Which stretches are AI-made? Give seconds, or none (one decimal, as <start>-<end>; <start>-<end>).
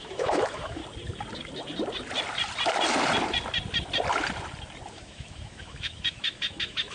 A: 0.0-0.8; 4.9-6.9